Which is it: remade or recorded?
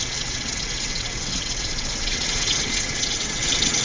remade